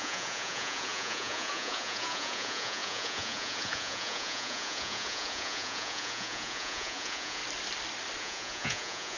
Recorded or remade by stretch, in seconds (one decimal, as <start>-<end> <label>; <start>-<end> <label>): 0.0-7.4 remade; 7.4-8.2 recorded; 8.2-9.2 remade